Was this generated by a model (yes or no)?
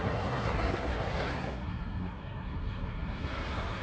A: yes